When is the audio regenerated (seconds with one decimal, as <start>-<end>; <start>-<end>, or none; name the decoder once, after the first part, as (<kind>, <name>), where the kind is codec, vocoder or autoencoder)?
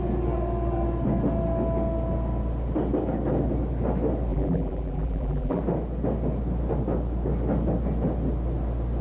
4.3-5.6 (vocoder, BigVGAN v2)